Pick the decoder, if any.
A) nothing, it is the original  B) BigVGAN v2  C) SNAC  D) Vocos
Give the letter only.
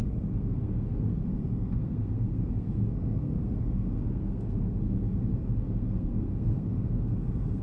C